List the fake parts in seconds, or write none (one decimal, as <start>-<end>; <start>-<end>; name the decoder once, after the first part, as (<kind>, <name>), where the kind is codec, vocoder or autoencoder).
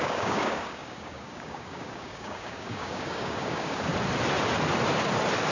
0.0-3.9 (codec, DAC)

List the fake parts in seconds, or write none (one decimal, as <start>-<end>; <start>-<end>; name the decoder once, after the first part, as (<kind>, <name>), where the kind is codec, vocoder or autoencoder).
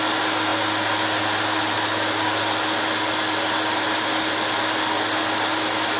none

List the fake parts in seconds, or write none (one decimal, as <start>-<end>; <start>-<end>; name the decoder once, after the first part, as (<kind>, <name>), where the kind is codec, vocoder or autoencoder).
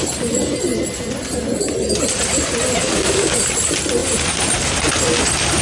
2.8-3.3 (codec, DAC)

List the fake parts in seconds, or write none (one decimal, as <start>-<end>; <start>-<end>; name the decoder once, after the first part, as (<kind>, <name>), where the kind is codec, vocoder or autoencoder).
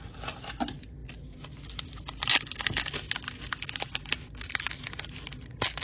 none